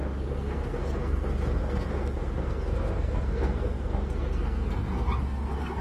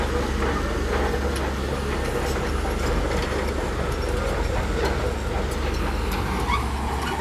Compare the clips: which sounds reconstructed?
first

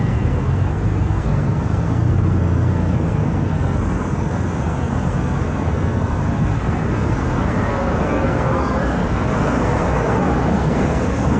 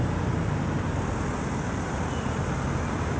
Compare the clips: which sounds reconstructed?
first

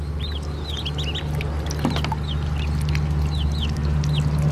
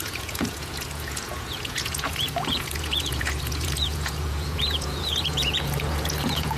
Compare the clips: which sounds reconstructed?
second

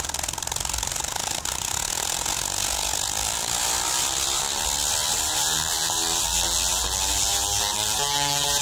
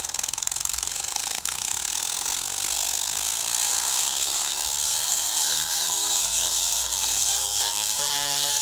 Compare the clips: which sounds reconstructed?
second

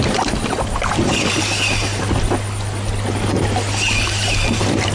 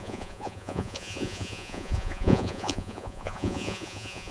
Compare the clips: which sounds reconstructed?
second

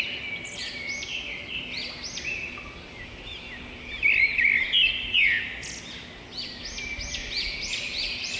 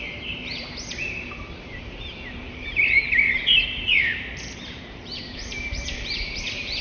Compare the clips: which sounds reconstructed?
second